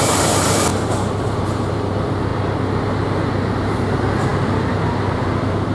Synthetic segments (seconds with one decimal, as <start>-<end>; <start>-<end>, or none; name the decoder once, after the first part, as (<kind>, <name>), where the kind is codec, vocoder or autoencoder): 0.0-2.3 (vocoder, BigVGAN v2); 3.9-5.7